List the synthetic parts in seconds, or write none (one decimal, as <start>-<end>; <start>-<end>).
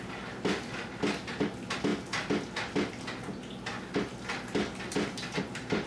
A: none